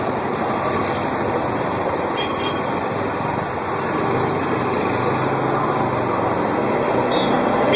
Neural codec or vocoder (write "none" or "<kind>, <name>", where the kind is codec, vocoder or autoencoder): none